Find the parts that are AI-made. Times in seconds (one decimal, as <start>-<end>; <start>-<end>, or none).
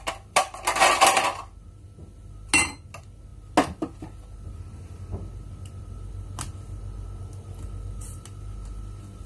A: none